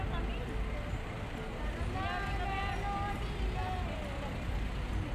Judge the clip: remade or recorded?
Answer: recorded